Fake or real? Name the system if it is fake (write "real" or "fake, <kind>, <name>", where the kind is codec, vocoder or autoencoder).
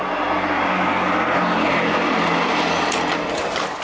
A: real